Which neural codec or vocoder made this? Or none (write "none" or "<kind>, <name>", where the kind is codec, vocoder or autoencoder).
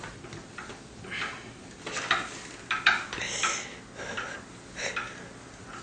none